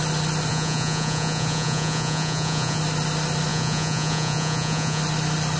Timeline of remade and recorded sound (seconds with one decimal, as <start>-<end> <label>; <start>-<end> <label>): 0.0-0.5 recorded; 0.5-2.8 remade; 2.8-3.5 recorded; 3.5-5.0 remade; 5.0-5.6 recorded